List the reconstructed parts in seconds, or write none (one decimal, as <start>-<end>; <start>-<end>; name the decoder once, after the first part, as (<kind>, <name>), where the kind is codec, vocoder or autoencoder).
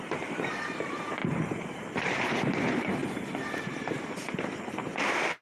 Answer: 0.0-3.0 (vocoder, BigVGAN v2); 3.5-5.4